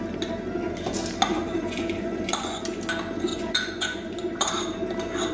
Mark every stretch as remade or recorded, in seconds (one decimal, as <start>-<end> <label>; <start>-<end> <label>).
0.0-1.3 recorded; 1.3-2.6 remade; 2.6-3.3 recorded; 3.3-4.5 remade; 4.5-5.3 recorded